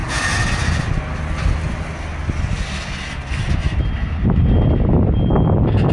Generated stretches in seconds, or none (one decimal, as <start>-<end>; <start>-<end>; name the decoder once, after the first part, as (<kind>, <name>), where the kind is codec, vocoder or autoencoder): none